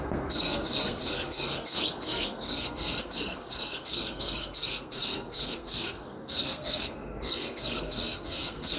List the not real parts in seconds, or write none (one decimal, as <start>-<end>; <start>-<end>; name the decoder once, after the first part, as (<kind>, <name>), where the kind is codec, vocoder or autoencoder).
0.0-8.8 (codec, SNAC)